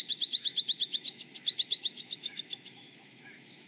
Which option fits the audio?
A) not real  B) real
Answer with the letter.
A